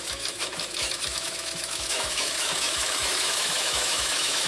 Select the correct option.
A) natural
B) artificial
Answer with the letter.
B